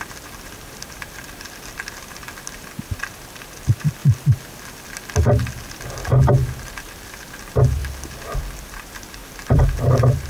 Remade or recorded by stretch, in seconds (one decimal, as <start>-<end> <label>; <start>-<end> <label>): 0.0-4.0 remade; 4.0-6.9 recorded; 6.9-7.8 remade; 7.8-8.4 recorded; 8.4-10.3 remade

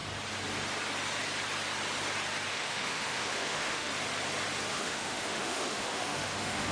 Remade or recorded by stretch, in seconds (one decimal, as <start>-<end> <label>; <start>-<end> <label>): 0.0-2.5 recorded; 2.5-3.9 remade; 3.9-4.7 recorded; 4.7-6.7 remade

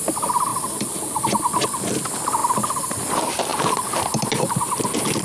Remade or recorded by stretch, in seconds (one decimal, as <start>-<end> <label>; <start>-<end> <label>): 0.0-0.5 recorded; 0.5-1.2 remade; 1.2-2.4 recorded; 2.4-3.1 remade; 3.1-5.2 recorded

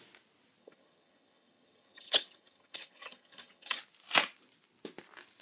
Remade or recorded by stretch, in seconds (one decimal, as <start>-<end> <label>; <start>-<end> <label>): 0.0-0.6 recorded; 0.6-3.8 remade; 3.8-5.4 recorded

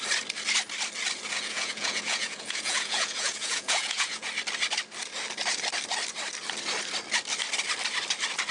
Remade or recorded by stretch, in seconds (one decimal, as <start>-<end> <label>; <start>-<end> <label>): 0.0-1.3 recorded; 1.3-4.3 remade; 4.3-8.5 recorded

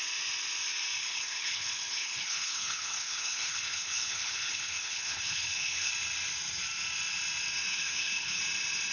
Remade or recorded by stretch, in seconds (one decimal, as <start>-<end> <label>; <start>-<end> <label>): 0.0-1.0 recorded; 1.0-5.9 remade; 5.9-7.7 recorded; 7.7-8.4 remade; 8.4-8.9 recorded